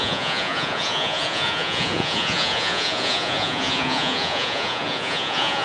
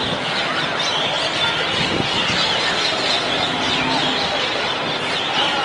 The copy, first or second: first